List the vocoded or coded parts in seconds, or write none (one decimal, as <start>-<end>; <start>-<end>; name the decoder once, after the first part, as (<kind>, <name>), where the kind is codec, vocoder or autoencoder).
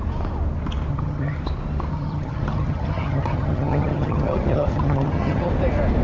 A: 0.9-1.4 (vocoder, HiFi-GAN); 1.9-5.5